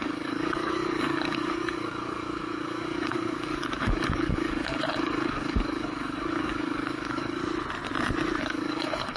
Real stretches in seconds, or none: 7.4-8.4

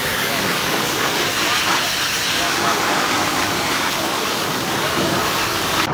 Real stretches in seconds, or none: 1.3-2.3

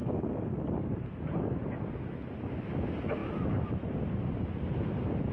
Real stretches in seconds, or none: 1.0-5.3

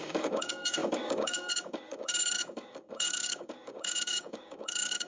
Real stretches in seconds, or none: none